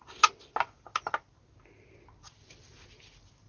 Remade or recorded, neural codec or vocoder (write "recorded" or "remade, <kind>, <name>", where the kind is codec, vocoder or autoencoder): recorded